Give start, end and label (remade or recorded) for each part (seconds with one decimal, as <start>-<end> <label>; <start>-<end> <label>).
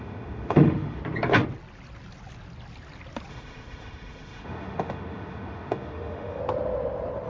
0.0-1.0 remade; 1.0-3.3 recorded; 3.3-6.4 remade; 6.4-7.3 recorded